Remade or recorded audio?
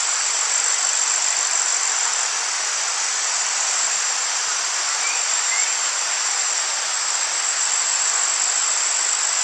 recorded